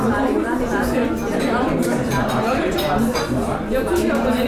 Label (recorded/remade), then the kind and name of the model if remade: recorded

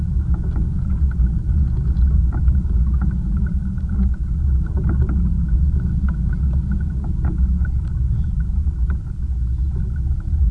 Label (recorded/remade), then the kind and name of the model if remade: recorded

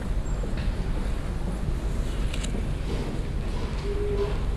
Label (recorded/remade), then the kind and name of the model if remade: recorded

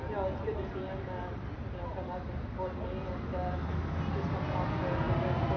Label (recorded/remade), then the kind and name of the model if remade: recorded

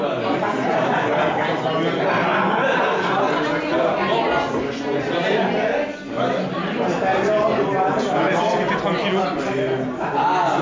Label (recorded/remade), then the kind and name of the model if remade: recorded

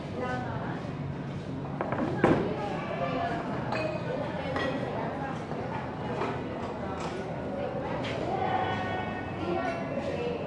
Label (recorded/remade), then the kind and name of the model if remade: recorded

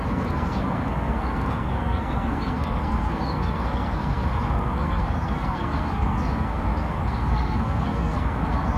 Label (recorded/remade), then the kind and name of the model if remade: remade, codec, SNAC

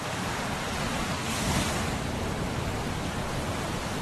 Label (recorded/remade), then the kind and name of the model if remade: recorded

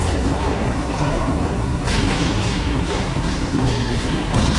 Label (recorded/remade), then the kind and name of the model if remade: remade, codec, SNAC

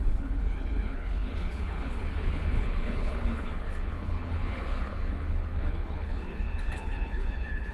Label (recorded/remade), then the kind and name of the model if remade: remade, codec, HILCodec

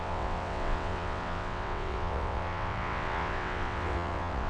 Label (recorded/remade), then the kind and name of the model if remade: remade, vocoder, WaveNeXt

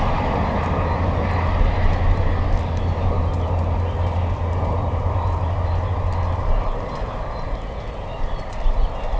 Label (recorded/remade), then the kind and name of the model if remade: recorded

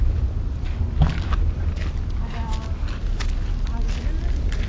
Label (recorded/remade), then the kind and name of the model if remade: recorded